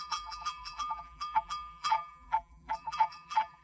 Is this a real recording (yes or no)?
no